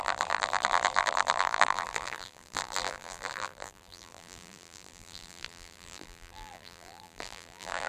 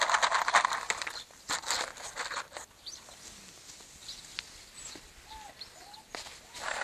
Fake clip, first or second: first